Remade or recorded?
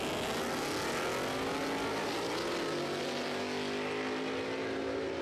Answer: recorded